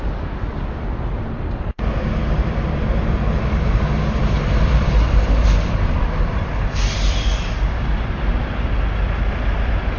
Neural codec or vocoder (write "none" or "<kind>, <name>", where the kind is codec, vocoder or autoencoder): vocoder, BigVGAN v2